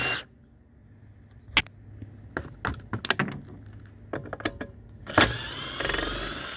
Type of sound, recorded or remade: recorded